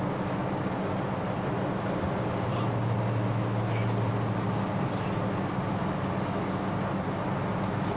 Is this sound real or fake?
real